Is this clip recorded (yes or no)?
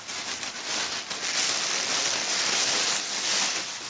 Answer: yes